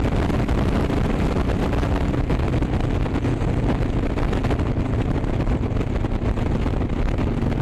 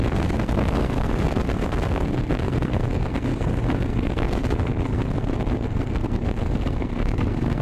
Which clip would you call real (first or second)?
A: first